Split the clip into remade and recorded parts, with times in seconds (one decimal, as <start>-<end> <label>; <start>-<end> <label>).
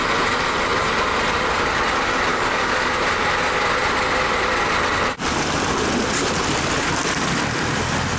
0.0-2.3 recorded; 2.3-2.9 remade; 2.9-8.2 recorded